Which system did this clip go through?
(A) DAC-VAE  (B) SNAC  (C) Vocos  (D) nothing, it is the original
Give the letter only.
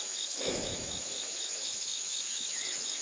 A